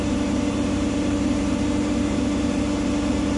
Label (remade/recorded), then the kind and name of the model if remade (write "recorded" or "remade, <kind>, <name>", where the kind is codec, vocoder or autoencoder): remade, vocoder, BigVGAN v2